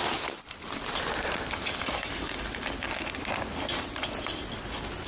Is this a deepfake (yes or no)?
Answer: yes